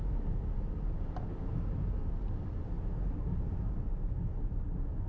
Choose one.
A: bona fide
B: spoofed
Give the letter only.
A